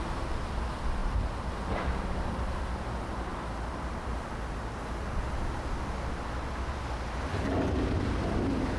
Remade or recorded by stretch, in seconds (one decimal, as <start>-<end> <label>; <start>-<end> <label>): 0.0-1.0 recorded; 1.0-1.5 remade; 1.5-8.8 recorded